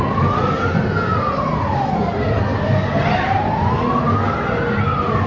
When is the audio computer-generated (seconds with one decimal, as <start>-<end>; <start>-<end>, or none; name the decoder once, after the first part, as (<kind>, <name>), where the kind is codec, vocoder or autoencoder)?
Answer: none